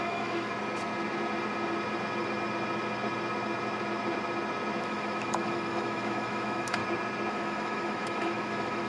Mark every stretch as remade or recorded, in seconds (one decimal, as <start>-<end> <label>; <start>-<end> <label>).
0.0-0.5 remade; 0.5-4.8 recorded; 4.8-6.8 remade; 6.8-7.3 recorded; 7.3-8.9 remade